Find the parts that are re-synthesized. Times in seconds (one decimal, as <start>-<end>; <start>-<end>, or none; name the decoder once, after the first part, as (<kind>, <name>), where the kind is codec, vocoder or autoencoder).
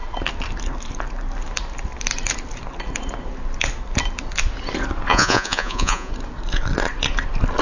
5.1-6.1 (vocoder, Vocos)